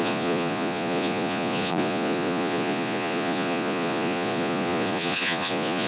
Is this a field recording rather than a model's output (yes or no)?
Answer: no